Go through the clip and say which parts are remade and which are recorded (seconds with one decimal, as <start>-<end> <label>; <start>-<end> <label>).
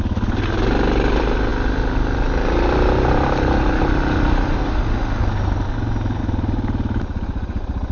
0.0-7.9 recorded